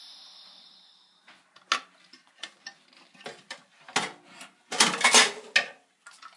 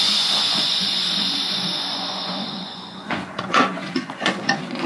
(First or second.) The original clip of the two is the first